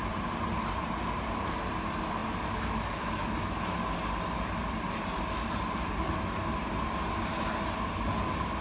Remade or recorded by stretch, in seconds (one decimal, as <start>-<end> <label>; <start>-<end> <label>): 0.0-8.6 recorded